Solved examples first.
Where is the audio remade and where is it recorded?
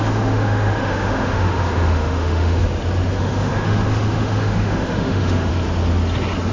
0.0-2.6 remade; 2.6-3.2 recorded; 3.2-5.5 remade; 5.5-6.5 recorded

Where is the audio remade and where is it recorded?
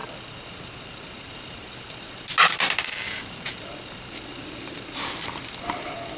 0.0-6.2 recorded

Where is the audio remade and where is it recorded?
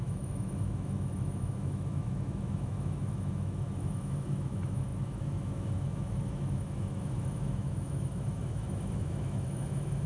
0.0-10.1 remade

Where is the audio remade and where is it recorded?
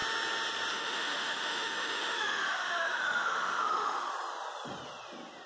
0.0-0.7 recorded; 0.7-4.1 remade; 4.1-5.5 recorded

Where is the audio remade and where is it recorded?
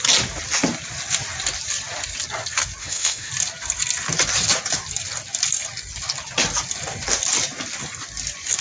0.0-2.8 recorded; 2.8-3.3 remade; 3.3-8.6 recorded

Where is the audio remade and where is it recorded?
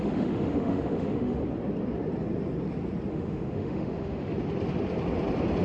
0.0-1.4 remade; 1.4-3.1 recorded; 3.1-4.3 remade; 4.3-5.6 recorded